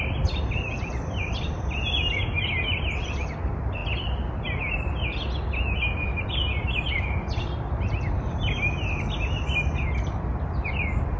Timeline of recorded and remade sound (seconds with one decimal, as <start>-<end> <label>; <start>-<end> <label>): 0.0-11.2 recorded